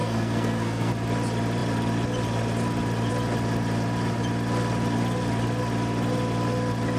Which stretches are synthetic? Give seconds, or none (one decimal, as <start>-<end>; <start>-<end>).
0.0-0.9